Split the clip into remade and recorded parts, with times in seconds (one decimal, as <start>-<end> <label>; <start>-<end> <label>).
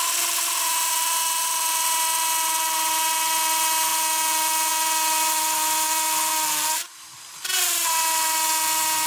0.0-9.1 recorded